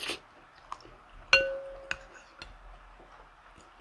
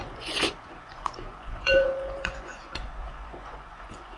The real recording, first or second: first